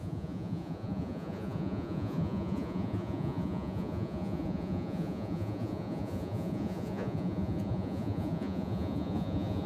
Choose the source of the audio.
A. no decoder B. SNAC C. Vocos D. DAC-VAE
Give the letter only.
C